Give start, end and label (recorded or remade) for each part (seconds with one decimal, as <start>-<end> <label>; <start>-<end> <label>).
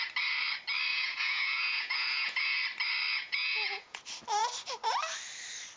0.0-0.9 recorded; 0.9-2.6 remade; 2.6-3.1 recorded; 3.1-4.0 remade; 4.0-5.8 recorded